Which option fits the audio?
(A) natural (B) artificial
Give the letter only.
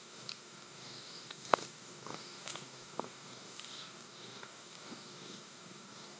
B